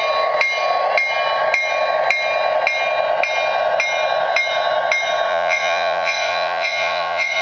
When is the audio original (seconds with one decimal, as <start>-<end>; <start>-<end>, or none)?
0.0-5.3